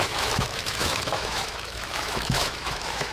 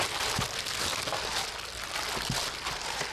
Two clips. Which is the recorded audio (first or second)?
second